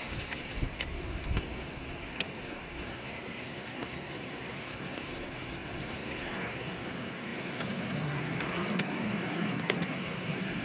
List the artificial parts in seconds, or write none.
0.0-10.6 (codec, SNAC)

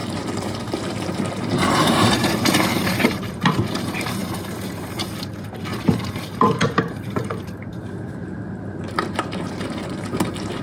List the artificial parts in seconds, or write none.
0.0-4.2 (vocoder, BigVGAN v2); 6.0-10.6

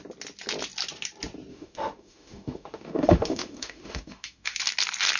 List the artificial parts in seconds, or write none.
1.5-4.6 (autoencoder, DAC-VAE)

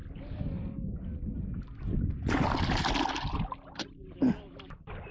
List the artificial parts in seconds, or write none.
none